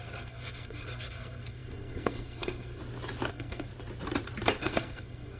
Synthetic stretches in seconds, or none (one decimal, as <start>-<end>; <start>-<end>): 0.0-2.8; 3.3-3.7; 4.6-5.4